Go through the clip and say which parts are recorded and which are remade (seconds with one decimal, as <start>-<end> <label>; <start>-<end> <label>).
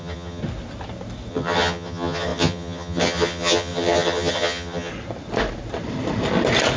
0.0-0.4 remade; 0.4-1.3 recorded; 1.3-4.9 remade; 4.9-6.8 recorded